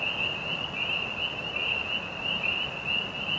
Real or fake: real